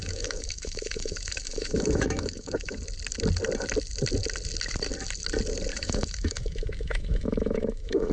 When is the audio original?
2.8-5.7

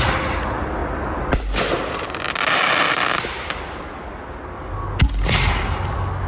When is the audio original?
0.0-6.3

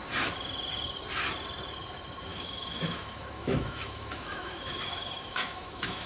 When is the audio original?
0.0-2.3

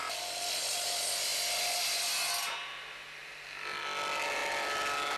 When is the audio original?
0.0-5.2

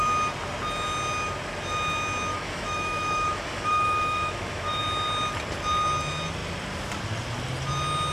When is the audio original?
0.0-2.3; 4.8-8.1

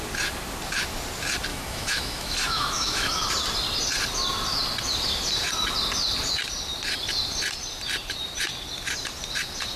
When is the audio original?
0.0-1.5; 3.2-9.8

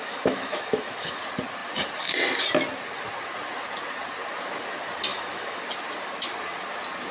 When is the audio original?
1.2-5.1; 5.6-7.1